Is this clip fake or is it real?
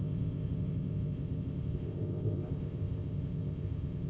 fake